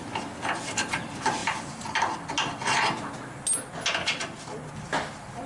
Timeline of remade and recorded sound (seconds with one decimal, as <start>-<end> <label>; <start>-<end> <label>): 0.0-5.5 recorded